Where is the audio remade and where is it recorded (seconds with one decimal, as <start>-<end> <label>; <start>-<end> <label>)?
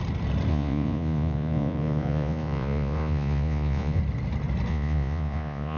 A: 0.0-0.5 recorded; 0.5-4.0 remade; 4.0-4.7 recorded; 4.7-5.8 remade